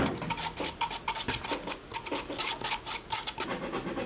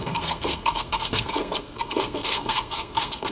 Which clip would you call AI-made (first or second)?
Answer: second